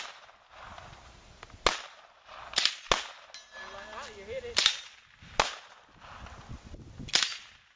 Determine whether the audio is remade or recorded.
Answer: recorded